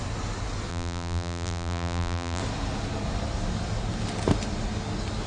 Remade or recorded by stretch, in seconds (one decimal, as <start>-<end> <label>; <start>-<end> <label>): 0.0-0.7 recorded; 0.7-2.4 remade; 2.4-5.3 recorded